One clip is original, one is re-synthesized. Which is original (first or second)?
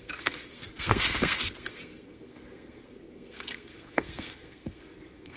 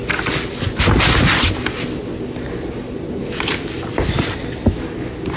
second